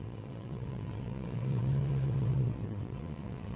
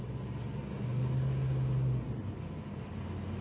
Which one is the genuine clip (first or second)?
second